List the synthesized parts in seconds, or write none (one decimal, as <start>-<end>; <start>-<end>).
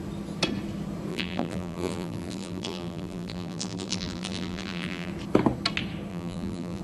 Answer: 1.1-5.1; 6.1-6.8